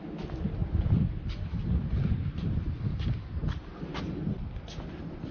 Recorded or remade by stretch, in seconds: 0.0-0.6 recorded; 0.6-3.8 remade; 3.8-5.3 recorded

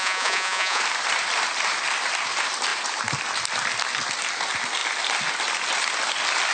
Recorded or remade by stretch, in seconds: 0.0-0.8 remade; 0.8-6.5 recorded